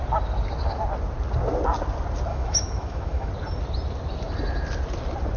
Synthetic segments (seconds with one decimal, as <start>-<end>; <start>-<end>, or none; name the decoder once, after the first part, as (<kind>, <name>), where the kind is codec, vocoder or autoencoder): 2.3-3.3 (autoencoder, DAC-VAE)